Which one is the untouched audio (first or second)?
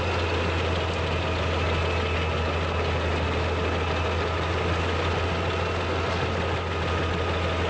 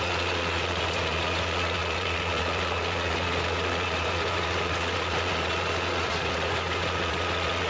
first